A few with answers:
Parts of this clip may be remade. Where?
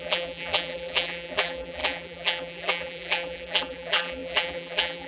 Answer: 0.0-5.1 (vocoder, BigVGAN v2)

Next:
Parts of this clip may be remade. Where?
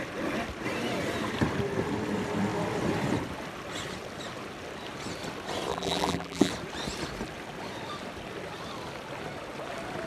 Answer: 5.7-6.5 (vocoder, BigVGAN v2)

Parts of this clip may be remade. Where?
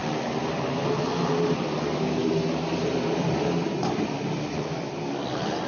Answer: 2.2-5.7 (vocoder, BigVGAN v2)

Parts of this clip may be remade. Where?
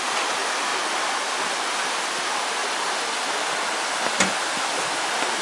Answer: none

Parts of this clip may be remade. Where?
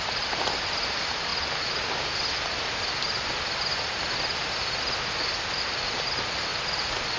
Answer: 0.0-1.3 (vocoder, BigVGAN v2); 5.6-6.5